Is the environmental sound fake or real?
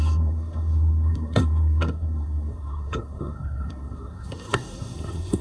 fake